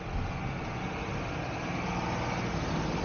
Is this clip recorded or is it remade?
recorded